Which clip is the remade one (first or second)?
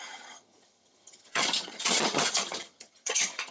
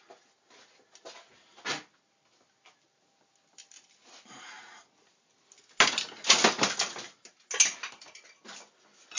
first